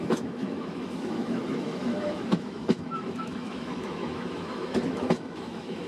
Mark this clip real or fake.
fake